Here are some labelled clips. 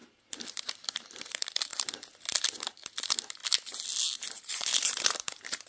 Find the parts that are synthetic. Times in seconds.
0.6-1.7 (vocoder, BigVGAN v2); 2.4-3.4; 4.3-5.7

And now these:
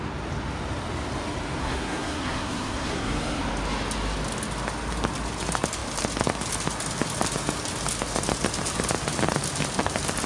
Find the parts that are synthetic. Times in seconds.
1.6-3.4 (codec, SNAC)

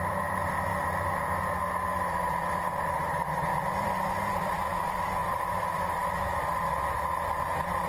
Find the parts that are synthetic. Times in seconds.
0.0-0.7 (vocoder, BigVGAN v2); 2.1-7.9